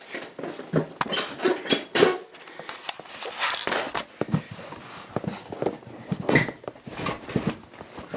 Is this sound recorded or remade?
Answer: recorded